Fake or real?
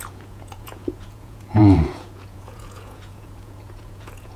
fake